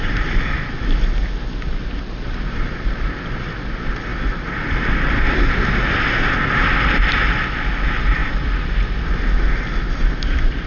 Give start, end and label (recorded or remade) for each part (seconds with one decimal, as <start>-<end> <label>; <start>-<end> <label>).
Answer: 0.0-10.7 recorded

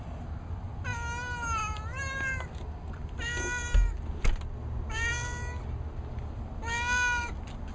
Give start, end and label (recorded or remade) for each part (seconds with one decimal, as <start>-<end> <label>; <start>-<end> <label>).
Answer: 0.0-7.7 recorded

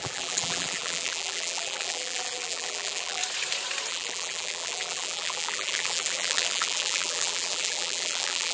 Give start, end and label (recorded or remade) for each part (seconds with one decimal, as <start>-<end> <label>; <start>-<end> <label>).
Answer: 0.0-3.2 remade; 3.2-3.9 recorded; 3.9-8.5 remade

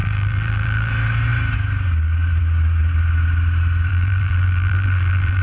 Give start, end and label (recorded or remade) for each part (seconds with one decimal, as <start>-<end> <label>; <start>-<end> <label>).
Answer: 0.0-0.9 remade; 0.9-3.9 recorded; 3.9-5.4 remade

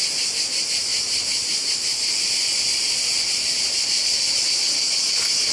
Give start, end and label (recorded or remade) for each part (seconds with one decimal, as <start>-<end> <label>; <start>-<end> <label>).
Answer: 0.0-5.5 recorded